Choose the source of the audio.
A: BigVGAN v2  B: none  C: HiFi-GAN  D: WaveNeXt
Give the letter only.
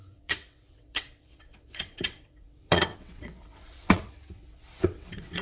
D